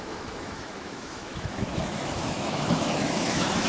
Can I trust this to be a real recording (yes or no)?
no